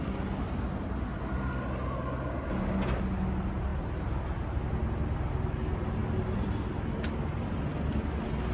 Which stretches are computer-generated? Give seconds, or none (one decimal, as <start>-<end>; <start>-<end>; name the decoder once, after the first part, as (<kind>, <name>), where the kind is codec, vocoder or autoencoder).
none